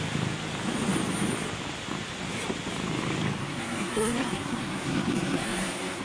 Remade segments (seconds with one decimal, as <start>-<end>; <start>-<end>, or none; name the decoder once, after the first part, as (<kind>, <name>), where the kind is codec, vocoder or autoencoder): 3.4-6.0 (codec, SNAC)

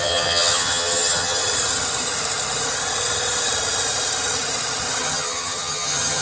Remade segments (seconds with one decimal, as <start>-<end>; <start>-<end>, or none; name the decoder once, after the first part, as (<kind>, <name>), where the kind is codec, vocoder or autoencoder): 0.0-1.4 (vocoder, HiFi-GAN); 5.0-6.2